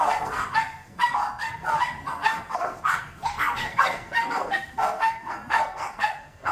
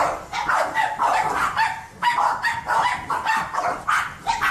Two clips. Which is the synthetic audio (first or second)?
first